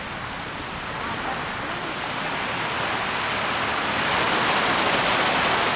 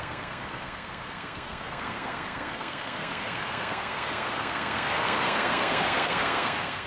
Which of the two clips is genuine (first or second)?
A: first